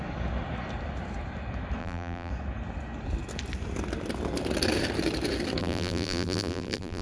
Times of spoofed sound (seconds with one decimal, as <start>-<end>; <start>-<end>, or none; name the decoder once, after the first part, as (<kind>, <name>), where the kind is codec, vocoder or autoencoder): 1.8-2.3 (vocoder, BigVGAN v2); 5.6-7.0

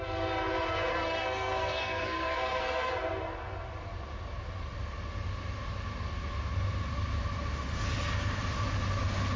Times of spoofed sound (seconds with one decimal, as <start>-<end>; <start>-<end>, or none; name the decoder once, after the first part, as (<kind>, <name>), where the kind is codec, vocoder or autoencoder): 0.9-2.9 (codec, SNAC)